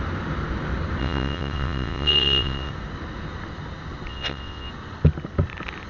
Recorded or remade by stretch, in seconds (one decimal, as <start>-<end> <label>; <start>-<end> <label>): 0.0-1.0 recorded; 1.0-2.7 remade; 2.7-4.1 recorded; 4.1-4.7 remade; 4.7-5.9 recorded

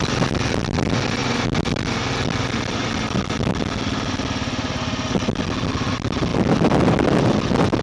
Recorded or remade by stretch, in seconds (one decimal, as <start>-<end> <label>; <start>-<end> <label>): 0.0-7.8 recorded

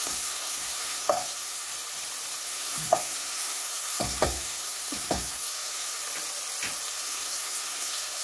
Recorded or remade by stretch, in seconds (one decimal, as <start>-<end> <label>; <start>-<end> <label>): 0.0-1.7 remade; 1.7-2.4 recorded; 2.4-6.0 remade; 6.0-6.9 recorded; 6.9-8.2 remade

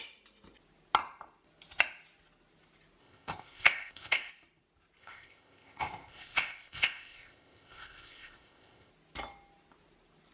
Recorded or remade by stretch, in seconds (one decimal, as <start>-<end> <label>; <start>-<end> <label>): 0.0-3.0 recorded; 3.0-4.3 remade; 4.3-5.0 recorded; 5.0-8.9 remade; 8.9-10.3 recorded

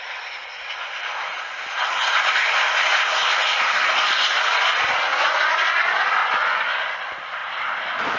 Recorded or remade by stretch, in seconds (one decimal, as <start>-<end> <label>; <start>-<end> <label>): 0.0-5.1 recorded; 5.1-5.8 remade; 5.8-6.2 recorded; 6.2-7.0 remade; 7.0-8.2 recorded

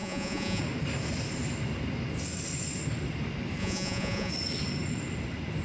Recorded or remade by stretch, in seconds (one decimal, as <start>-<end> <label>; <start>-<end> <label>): 0.0-0.6 remade; 0.6-3.6 recorded; 3.6-4.3 remade; 4.3-5.6 recorded

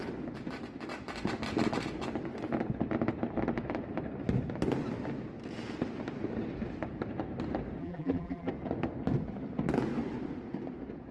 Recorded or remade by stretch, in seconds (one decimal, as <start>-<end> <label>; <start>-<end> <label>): 0.0-7.8 recorded; 7.8-8.5 remade; 8.5-11.1 recorded

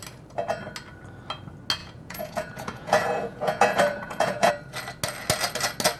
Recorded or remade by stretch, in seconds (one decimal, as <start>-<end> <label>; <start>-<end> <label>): 0.0-1.8 recorded; 1.8-4.5 remade; 4.5-6.0 recorded